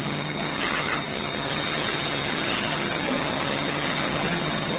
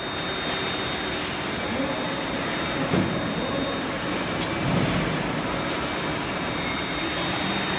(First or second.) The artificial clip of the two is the first